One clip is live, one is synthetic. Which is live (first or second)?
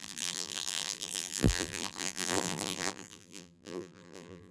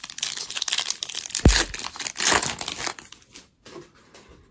second